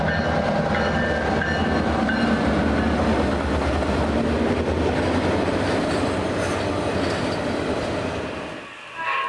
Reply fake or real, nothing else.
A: real